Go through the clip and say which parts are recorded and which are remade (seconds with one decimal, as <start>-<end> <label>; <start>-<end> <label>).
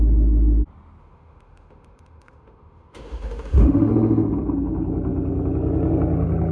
0.0-1.0 recorded; 1.0-3.9 remade; 3.9-6.5 recorded